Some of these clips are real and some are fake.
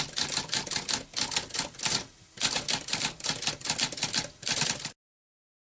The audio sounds real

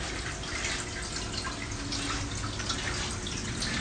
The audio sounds real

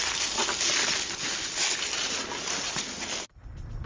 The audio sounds real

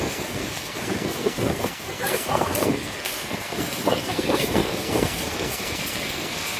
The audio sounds fake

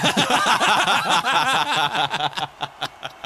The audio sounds real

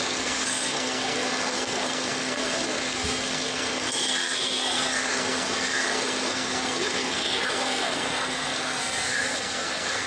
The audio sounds fake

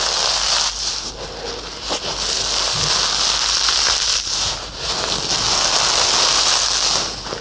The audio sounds real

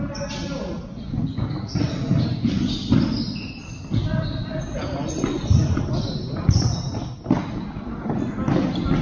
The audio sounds real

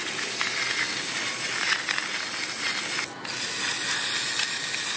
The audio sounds real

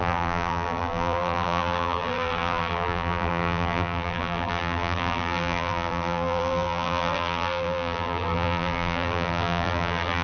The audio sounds fake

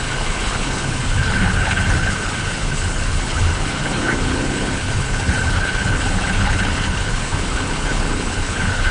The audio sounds fake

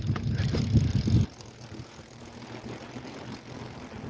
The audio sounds real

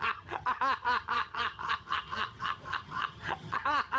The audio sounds fake